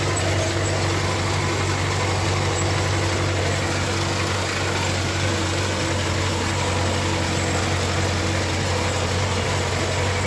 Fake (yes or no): no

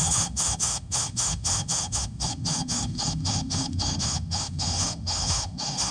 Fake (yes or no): yes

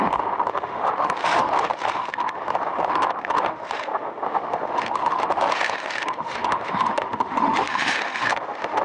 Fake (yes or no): yes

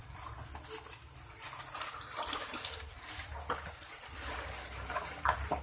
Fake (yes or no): no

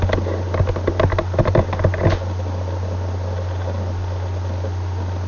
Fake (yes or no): no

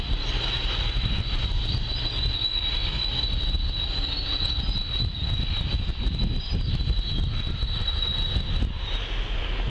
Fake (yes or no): no